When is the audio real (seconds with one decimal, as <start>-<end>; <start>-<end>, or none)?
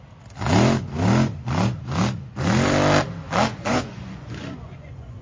0.0-3.5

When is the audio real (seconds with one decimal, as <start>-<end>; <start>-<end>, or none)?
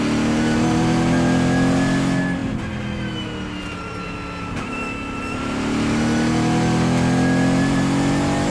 0.0-8.5